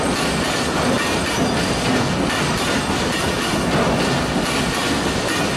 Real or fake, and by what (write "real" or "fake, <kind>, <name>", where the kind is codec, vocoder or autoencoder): real